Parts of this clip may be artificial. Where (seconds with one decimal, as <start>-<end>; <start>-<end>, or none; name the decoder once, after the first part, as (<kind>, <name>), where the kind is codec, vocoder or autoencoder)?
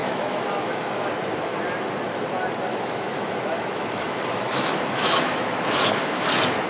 0.0-1.0 (autoencoder, DAC-VAE); 2.7-6.2